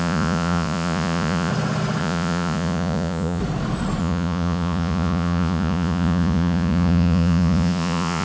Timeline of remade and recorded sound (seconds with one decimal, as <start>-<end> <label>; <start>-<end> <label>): 0.0-1.5 remade; 1.5-2.0 recorded; 2.0-3.4 remade; 3.4-4.0 recorded; 4.0-8.2 remade

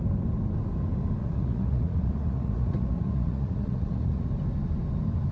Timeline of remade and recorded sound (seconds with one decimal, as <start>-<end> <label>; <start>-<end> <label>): 0.0-1.2 recorded; 1.2-4.3 remade; 4.3-5.3 recorded